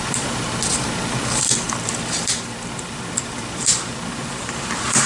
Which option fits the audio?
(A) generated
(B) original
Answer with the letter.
A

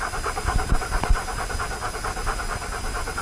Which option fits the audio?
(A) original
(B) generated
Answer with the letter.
A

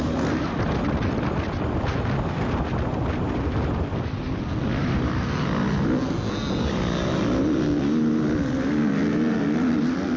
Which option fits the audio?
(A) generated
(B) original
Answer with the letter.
B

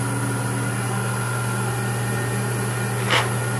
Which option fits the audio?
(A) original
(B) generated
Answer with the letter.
A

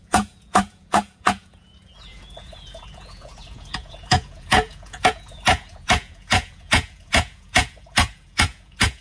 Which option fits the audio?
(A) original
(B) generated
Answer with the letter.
B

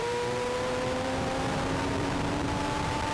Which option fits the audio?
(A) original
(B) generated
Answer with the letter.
B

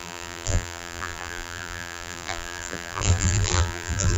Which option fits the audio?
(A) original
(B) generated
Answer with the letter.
B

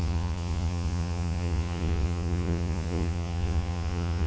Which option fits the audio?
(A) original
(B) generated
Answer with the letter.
B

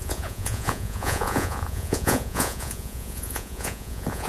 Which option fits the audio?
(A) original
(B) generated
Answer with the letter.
B